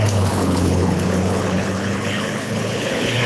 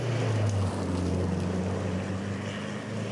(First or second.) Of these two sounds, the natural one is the second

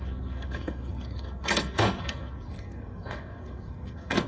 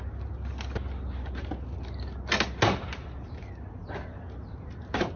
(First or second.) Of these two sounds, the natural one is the second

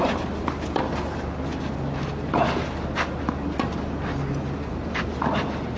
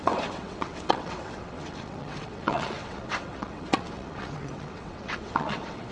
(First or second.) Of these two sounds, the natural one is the first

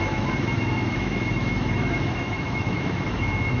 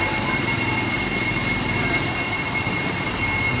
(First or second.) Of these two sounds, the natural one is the second